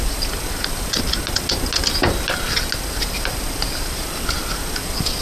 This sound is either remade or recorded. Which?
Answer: recorded